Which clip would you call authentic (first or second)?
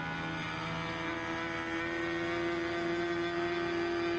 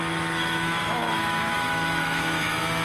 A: first